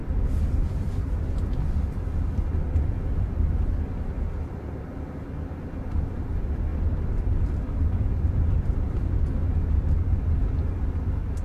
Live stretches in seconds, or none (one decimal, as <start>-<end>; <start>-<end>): 0.0-6.7; 9.0-11.4